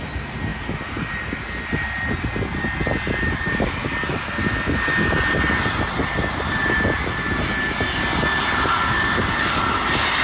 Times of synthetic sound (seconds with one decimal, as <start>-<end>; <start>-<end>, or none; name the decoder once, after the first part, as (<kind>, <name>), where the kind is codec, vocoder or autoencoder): none